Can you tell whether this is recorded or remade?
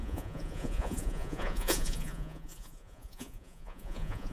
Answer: remade